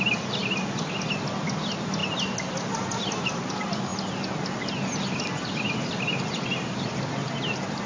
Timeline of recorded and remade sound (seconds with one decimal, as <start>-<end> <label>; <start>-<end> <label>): 0.0-7.9 recorded